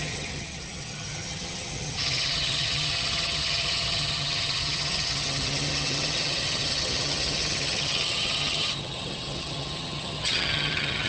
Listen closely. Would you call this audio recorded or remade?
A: remade